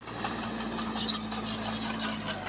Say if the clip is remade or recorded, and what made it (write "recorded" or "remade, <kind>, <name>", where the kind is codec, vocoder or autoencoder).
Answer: recorded